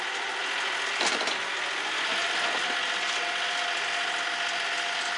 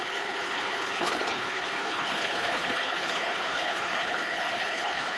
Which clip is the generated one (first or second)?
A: second